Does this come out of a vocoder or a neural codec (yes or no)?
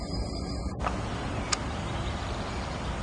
yes